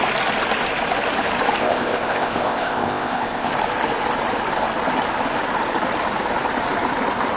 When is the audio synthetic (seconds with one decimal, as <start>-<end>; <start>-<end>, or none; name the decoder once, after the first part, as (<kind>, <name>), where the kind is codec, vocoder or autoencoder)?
1.6-3.5 (codec, ZipCodec)